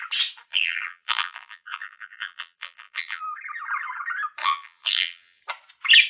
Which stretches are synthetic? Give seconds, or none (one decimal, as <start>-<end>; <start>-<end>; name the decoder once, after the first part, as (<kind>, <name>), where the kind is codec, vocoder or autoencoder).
0.5-3.2 (vocoder, BigVGAN v2); 4.4-5.4